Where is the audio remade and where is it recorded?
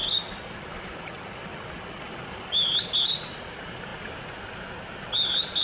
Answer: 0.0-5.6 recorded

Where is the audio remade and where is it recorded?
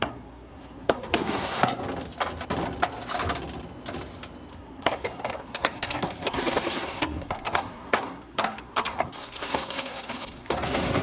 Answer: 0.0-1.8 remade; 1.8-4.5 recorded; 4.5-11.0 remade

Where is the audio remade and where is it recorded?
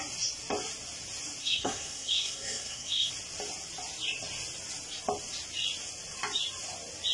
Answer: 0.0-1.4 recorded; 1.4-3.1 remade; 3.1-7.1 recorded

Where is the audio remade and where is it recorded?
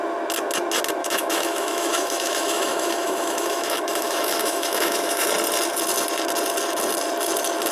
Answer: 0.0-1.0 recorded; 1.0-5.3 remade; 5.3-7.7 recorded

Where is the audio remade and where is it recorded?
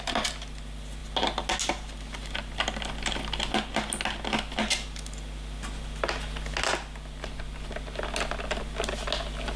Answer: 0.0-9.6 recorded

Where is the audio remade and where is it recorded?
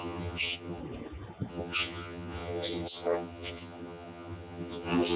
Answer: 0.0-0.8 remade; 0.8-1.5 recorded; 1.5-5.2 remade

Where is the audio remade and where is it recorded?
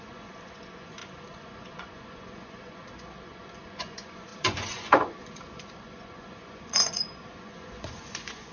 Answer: 0.0-8.5 remade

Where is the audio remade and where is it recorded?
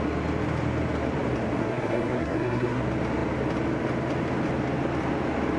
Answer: 0.0-1.6 recorded; 1.6-2.8 remade; 2.8-5.6 recorded